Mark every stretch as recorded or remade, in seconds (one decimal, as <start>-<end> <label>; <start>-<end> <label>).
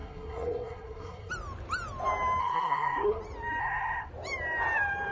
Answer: 0.0-1.3 remade; 1.3-2.4 recorded; 2.4-3.2 remade; 3.2-3.6 recorded; 3.6-4.1 remade; 4.1-5.1 recorded